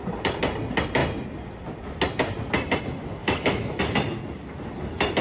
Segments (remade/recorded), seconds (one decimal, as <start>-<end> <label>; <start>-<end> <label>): 0.0-3.2 recorded; 3.2-3.8 remade; 3.8-5.2 recorded